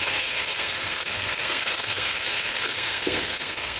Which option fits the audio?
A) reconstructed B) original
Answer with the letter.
A